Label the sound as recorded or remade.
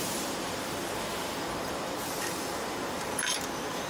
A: remade